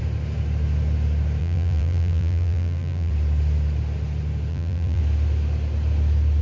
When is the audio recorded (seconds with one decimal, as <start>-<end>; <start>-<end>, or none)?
0.0-1.4; 3.1-4.5; 5.0-6.4

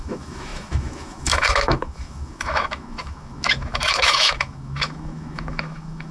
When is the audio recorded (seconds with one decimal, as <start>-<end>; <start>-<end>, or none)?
none

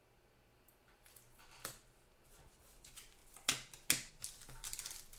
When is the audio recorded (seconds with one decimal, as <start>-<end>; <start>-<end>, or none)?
0.0-5.2

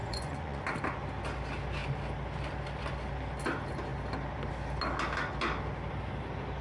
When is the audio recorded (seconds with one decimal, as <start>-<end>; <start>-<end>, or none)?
0.6-6.6

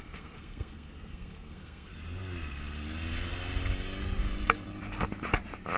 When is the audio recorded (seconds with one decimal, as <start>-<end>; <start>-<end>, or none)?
1.9-5.8

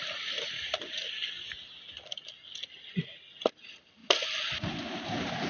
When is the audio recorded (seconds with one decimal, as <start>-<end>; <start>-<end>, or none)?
0.0-4.0; 4.5-5.5

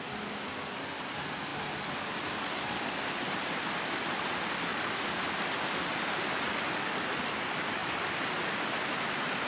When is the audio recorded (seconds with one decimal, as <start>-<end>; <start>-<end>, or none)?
0.0-9.5